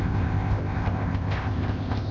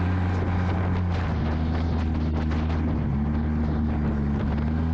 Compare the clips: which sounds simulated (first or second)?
first